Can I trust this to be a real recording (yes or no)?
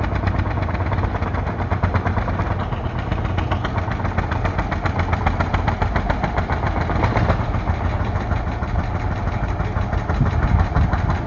yes